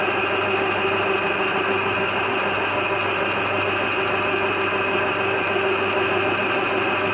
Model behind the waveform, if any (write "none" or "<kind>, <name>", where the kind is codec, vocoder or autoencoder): none